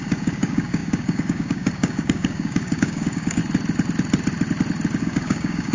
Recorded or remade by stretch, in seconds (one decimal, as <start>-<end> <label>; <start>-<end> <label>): 0.0-3.4 remade; 3.4-5.0 recorded; 5.0-5.7 remade